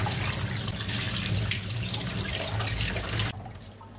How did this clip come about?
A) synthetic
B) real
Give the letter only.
B